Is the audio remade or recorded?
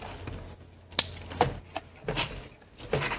recorded